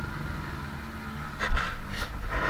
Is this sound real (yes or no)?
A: yes